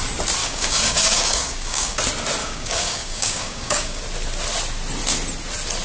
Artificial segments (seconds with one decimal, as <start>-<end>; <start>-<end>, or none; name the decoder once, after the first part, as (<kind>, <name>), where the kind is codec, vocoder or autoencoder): 0.4-2.0 (codec, DAC); 2.4-4.0

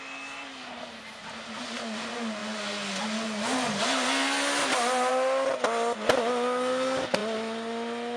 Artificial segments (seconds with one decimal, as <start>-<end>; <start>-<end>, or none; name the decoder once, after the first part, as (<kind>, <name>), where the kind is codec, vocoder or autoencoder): none

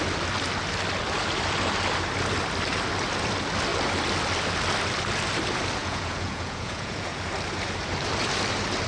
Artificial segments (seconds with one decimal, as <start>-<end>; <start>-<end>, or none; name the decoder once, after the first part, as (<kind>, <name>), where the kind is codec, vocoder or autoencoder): 5.8-7.2 (vocoder, Vocos)

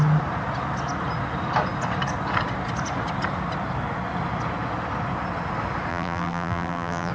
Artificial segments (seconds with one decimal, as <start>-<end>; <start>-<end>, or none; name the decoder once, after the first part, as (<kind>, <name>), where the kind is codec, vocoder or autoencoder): 5.9-7.1 (vocoder, BigVGAN v2)